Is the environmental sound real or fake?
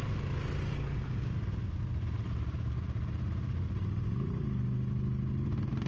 real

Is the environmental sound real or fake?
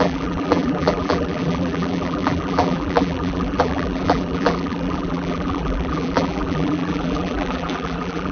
fake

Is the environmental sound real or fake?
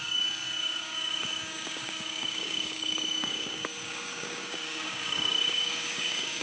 fake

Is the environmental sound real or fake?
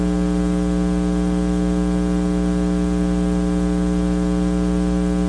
real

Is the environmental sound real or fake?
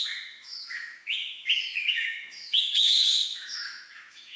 fake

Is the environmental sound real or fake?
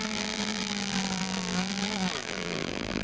fake